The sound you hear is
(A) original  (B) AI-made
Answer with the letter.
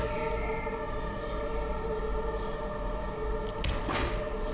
A